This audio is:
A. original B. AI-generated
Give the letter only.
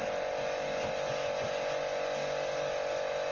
A